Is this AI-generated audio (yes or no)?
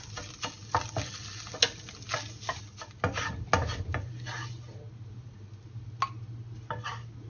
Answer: no